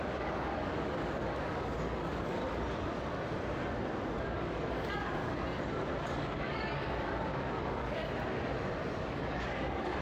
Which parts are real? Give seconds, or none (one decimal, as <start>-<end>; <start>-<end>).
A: 2.4-4.2; 5.2-6.0; 8.0-9.0